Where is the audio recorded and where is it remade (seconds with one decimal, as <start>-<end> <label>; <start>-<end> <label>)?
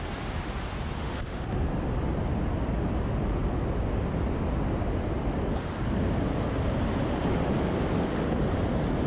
0.0-1.0 recorded; 1.0-1.6 remade; 1.6-9.1 recorded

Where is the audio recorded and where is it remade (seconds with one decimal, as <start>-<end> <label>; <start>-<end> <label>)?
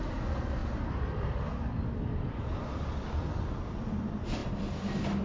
0.0-0.6 remade; 0.6-2.7 recorded; 2.7-5.2 remade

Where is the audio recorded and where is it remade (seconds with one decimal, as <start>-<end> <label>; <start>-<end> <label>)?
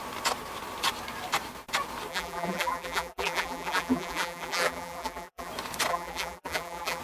0.0-2.1 recorded; 2.1-5.5 remade; 5.5-5.9 recorded; 5.9-7.0 remade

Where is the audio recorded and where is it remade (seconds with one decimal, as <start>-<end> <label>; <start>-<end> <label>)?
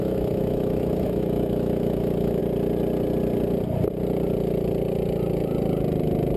0.0-2.4 remade; 2.4-6.4 recorded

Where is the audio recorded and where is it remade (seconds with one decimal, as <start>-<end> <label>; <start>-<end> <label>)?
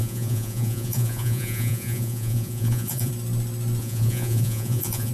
0.0-3.1 remade; 3.1-3.8 recorded; 3.8-5.1 remade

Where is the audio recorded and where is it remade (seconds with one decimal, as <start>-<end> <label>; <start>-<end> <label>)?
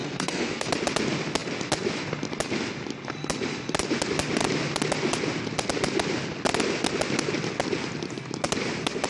0.0-0.7 remade; 0.7-9.1 recorded